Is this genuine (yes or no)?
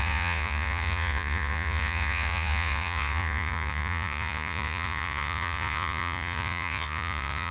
no